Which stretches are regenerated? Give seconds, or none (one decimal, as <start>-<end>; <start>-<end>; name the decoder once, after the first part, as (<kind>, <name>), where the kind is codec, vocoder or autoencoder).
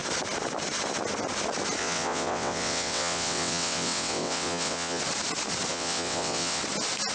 1.8-5.0 (vocoder, WaveNeXt); 5.7-6.6